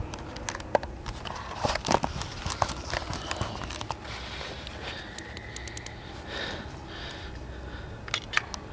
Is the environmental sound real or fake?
real